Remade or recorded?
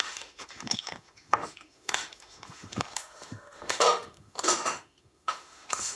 remade